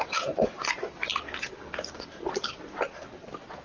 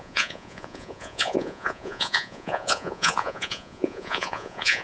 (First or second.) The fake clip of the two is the second